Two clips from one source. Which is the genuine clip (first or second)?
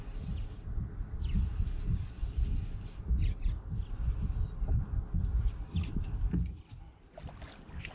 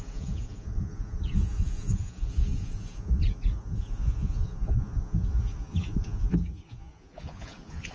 first